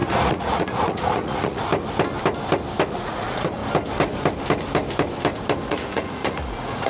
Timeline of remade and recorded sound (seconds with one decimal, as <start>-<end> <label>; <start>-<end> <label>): 0.0-1.7 remade; 1.7-2.9 recorded; 2.9-3.6 remade; 3.6-5.7 recorded; 5.7-6.9 remade